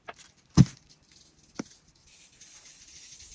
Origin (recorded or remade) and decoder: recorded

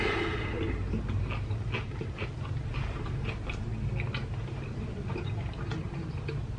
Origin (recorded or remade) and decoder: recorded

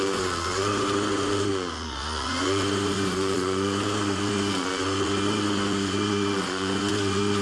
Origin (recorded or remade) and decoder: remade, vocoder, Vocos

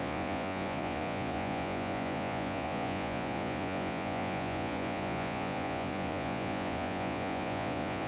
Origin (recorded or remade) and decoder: remade, vocoder, Vocos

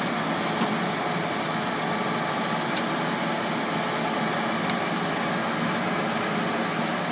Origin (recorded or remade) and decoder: recorded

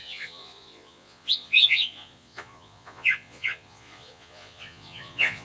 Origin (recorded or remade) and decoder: remade, vocoder, Vocos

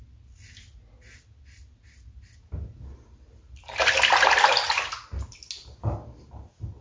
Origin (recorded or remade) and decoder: recorded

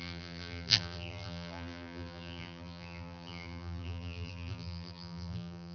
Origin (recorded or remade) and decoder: remade, vocoder, BigVGAN v2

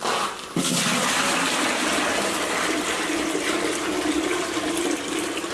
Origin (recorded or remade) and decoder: recorded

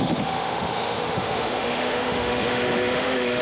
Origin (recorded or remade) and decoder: remade, autoencoder, DAC-VAE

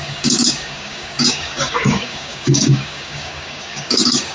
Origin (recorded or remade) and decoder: remade, codec, DAC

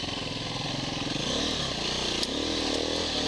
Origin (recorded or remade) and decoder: recorded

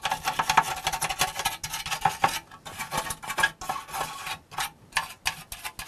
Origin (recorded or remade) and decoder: recorded